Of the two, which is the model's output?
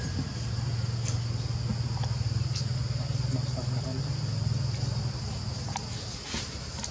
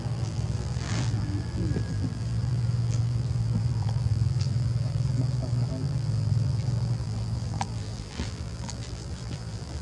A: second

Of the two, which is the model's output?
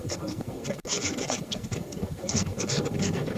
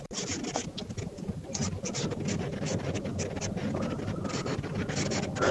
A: first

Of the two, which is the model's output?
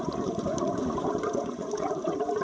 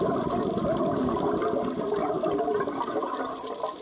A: first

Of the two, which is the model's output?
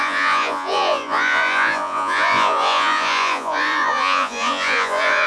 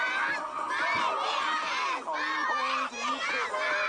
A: first